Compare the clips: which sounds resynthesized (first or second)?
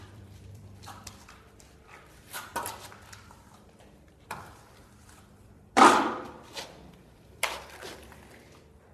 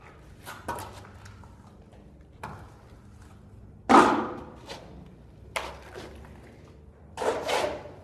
first